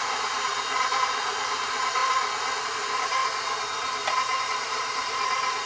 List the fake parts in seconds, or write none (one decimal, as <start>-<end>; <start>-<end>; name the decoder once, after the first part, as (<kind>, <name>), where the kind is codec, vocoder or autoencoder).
0.0-0.5 (vocoder, BigVGAN v2); 1.2-2.0; 2.6-3.2; 4.4-5.7